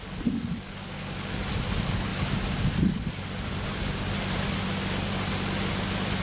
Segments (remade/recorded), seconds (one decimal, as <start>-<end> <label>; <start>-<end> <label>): 0.0-6.2 recorded